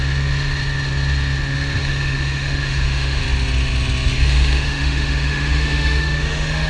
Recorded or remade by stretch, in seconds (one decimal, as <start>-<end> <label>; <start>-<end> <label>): 0.0-1.8 recorded; 1.8-3.2 remade; 3.2-4.1 recorded; 4.1-6.7 remade